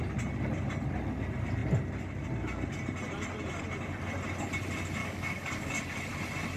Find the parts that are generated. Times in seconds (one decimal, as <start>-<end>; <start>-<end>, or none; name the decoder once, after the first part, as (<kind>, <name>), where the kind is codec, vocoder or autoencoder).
5.0-5.8 (codec, DAC)